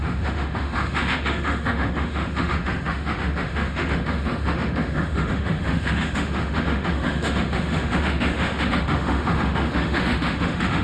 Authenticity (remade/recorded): remade